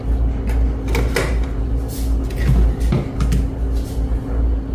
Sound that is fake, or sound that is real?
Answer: real